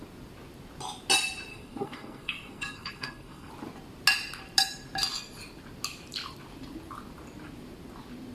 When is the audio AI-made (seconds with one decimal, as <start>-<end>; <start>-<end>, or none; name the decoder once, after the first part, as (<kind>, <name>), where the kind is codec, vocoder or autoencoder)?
1.5-3.5 (codec, SNAC)